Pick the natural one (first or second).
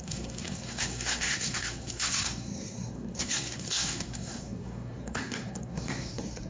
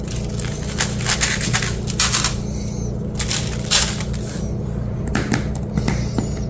second